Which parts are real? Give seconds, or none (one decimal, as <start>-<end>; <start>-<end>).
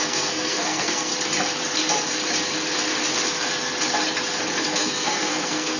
1.1-4.6